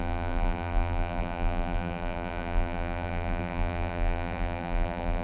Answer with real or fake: fake